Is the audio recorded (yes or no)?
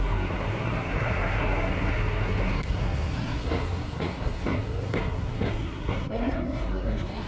no